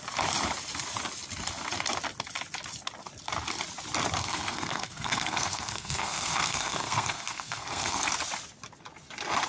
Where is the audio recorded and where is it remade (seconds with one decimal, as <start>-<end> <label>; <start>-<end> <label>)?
0.0-4.2 recorded; 4.2-8.1 remade; 8.1-9.5 recorded